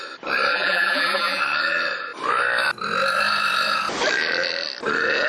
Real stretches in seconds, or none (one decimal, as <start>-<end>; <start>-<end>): 0.0-0.5; 1.4-5.3